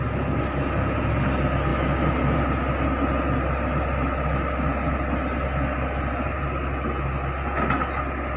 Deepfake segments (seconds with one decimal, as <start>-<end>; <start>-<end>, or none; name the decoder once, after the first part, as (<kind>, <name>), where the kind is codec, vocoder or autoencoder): none